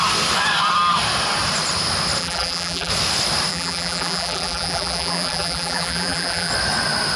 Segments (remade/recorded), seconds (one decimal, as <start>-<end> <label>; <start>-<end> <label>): 0.0-2.2 recorded; 2.2-2.9 remade; 2.9-3.5 recorded; 3.5-6.5 remade; 6.5-7.2 recorded